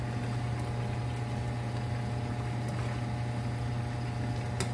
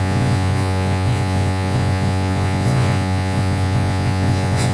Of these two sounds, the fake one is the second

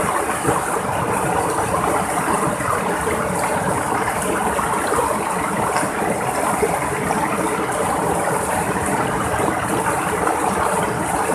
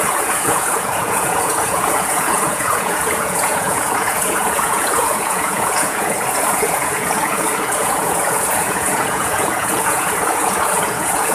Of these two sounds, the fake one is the second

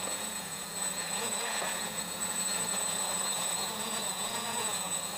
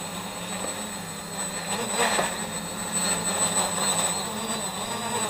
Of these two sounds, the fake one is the first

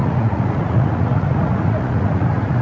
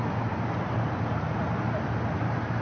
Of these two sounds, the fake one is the first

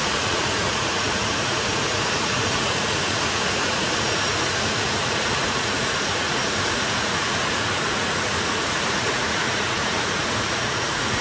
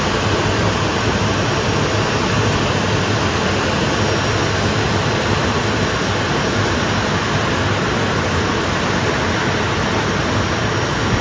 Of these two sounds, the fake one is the first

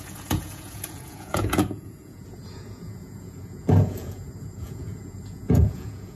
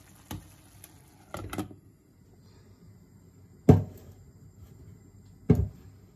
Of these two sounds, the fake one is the first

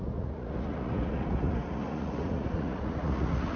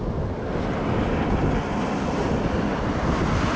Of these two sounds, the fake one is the first